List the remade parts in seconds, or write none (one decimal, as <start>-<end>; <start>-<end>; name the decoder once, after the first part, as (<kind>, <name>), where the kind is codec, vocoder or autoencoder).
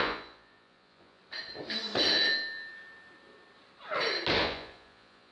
0.0-1.2 (vocoder, Vocos); 4.4-5.3